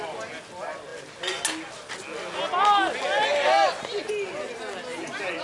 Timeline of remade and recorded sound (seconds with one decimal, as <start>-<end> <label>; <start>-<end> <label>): 0.0-5.4 recorded